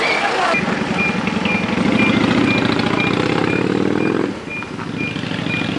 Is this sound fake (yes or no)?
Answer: no